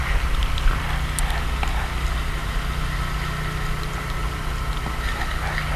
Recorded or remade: recorded